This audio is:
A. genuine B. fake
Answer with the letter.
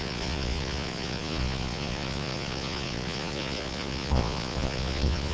B